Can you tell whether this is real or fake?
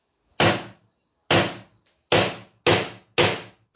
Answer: real